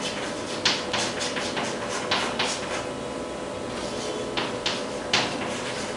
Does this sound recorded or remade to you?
recorded